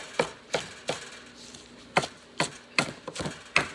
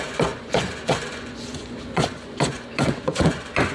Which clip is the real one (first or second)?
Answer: first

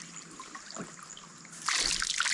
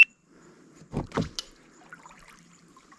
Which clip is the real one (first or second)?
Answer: first